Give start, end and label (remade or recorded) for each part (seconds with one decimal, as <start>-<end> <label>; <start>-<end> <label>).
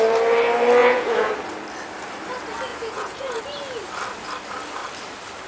0.0-0.8 recorded; 0.8-1.3 remade; 1.3-2.7 recorded; 2.7-3.4 remade; 3.4-5.5 recorded